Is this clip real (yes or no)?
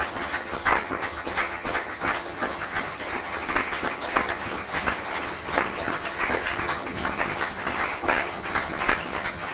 no